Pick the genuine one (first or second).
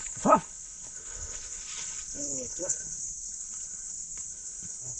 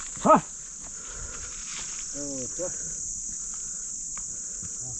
second